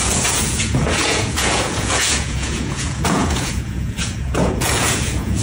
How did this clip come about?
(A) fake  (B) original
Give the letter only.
A